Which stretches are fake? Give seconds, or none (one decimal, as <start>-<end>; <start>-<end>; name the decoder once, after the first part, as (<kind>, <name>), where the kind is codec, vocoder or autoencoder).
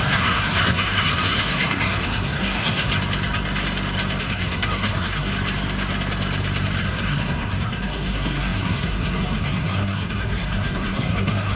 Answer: 0.0-2.9 (codec, SNAC); 4.2-5.3; 6.8-11.6